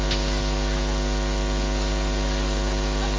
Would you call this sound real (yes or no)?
yes